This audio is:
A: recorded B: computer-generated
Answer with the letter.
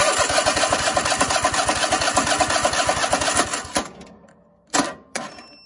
A